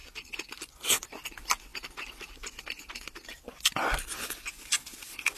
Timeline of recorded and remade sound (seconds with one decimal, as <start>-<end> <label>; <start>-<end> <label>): 0.0-5.4 recorded